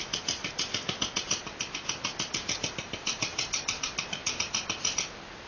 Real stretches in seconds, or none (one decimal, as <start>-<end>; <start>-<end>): 0.0-5.5